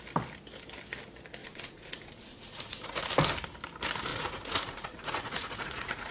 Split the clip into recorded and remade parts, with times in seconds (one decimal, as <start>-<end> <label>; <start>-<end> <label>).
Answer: 0.0-1.4 recorded; 1.4-3.1 remade; 3.1-4.1 recorded; 4.1-6.1 remade